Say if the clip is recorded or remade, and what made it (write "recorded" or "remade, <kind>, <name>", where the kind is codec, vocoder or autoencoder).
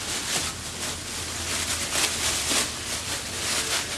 recorded